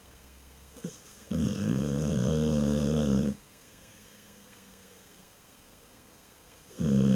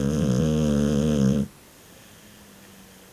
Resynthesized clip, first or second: first